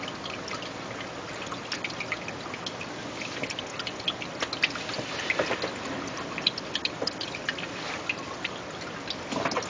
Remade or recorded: recorded